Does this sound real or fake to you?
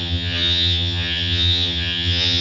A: fake